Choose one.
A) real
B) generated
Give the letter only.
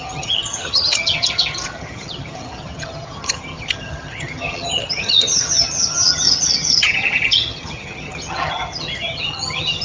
B